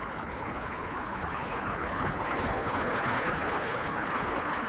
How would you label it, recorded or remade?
remade